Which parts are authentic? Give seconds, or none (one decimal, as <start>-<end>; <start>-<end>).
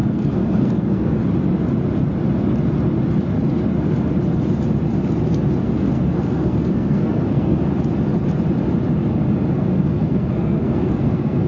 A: 1.2-5.6; 7.6-9.5